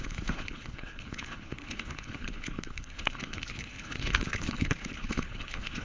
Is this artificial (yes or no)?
yes